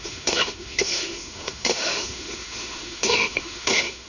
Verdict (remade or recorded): remade